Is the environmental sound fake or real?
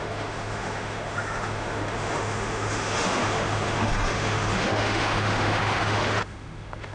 fake